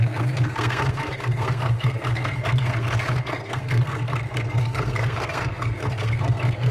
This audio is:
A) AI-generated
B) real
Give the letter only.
A